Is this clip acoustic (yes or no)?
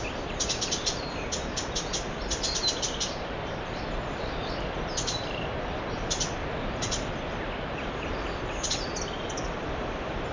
no